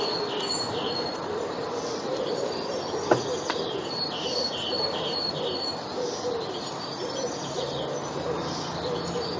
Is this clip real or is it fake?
real